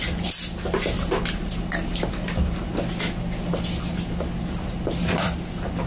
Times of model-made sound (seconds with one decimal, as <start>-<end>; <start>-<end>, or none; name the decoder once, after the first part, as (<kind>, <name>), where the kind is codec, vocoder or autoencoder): none